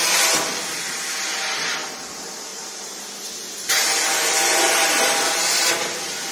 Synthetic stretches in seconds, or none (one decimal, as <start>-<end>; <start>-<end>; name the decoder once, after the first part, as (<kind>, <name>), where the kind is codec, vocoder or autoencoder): 2.5-3.0 (vocoder, BigVGAN v2)